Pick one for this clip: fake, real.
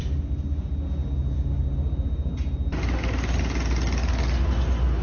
real